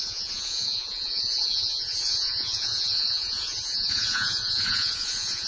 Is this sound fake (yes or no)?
yes